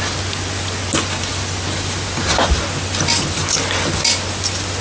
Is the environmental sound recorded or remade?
recorded